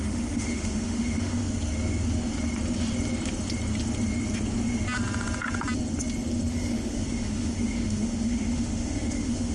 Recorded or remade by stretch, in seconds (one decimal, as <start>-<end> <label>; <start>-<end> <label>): 0.0-1.4 remade; 1.4-6.5 recorded; 6.5-9.5 remade